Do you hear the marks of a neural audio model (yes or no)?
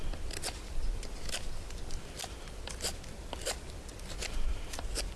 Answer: no